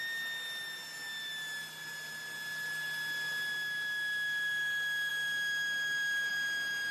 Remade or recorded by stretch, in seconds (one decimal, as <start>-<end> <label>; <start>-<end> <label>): 0.0-6.9 recorded